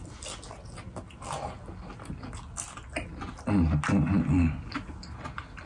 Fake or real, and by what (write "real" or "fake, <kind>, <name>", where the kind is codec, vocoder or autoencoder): real